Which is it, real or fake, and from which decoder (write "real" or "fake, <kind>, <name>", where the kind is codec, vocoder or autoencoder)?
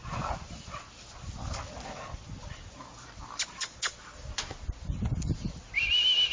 real